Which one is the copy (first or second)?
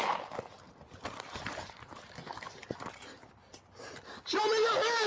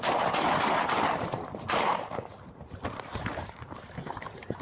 second